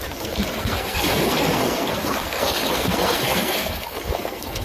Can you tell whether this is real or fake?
fake